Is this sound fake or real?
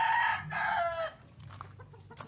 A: real